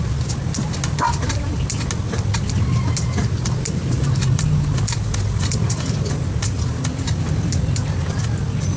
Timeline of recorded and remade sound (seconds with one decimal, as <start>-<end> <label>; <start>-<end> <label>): 0.0-3.2 recorded; 3.2-4.2 remade; 4.2-8.8 recorded